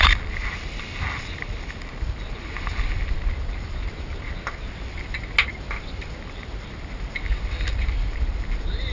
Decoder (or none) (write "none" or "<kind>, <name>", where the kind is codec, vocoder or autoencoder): none